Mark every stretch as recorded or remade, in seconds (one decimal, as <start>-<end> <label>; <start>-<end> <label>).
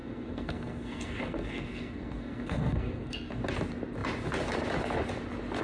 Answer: 0.0-3.4 remade; 3.4-5.6 recorded